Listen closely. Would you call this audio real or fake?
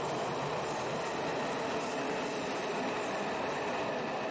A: real